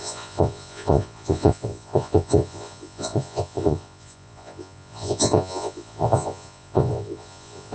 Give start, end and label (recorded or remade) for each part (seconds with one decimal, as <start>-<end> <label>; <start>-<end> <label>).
0.0-7.7 remade